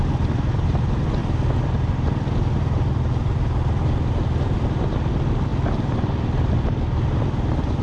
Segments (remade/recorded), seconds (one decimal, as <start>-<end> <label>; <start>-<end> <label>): 0.0-7.8 recorded